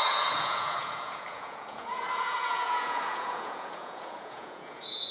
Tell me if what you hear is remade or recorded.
remade